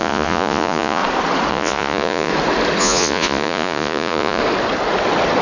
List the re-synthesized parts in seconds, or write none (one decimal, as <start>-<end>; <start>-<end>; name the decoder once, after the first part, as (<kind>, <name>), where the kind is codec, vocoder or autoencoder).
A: 0.0-1.0 (vocoder, Vocos); 1.5-2.3; 2.8-4.4